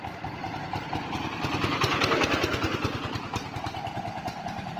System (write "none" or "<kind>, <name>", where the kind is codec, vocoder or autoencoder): vocoder, BigVGAN v2